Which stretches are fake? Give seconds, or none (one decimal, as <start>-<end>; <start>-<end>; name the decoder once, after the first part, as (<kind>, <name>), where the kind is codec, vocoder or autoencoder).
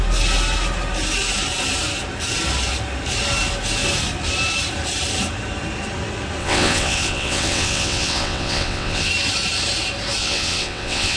6.4-9.1 (vocoder, WaveNeXt); 10.2-11.2